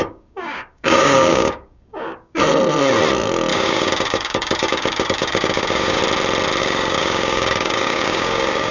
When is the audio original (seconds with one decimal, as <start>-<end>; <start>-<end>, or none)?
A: 2.4-3.5; 6.0-6.6